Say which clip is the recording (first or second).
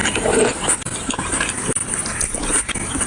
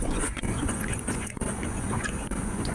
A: first